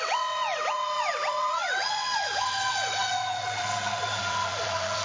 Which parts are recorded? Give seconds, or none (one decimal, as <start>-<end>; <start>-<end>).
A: none